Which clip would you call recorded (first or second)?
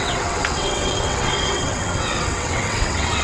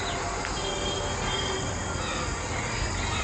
second